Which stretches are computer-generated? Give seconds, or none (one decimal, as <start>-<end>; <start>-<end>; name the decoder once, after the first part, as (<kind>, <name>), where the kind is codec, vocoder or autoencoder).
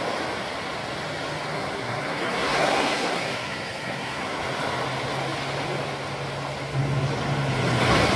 1.5-4.4 (codec, SNAC)